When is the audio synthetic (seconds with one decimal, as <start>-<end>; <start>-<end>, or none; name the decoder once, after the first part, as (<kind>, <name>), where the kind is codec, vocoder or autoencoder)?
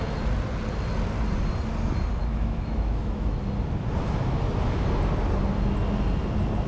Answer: 2.2-3.4 (autoencoder, DAC-VAE)